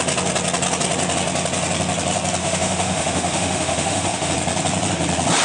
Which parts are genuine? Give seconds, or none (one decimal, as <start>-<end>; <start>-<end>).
0.0-2.4; 4.3-5.4